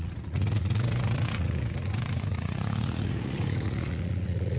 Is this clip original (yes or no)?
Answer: no